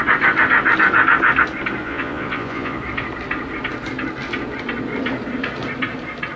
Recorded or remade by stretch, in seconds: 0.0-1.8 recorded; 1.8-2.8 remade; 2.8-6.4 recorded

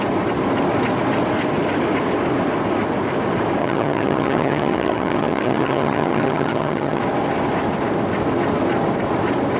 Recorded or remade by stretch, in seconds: 0.0-3.6 recorded; 3.6-7.0 remade; 7.0-9.6 recorded

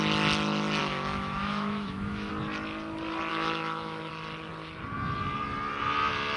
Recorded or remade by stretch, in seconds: 0.0-0.8 recorded; 0.8-2.3 remade; 2.3-3.3 recorded; 3.3-4.1 remade; 4.1-6.4 recorded

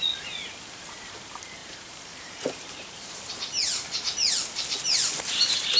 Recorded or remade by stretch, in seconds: 0.0-1.6 recorded; 1.6-3.2 remade; 3.2-5.8 recorded